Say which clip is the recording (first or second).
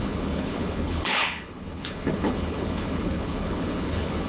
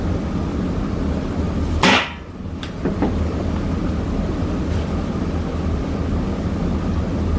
second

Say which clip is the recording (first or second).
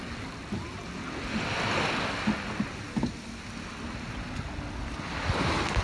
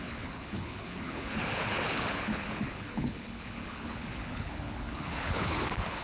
first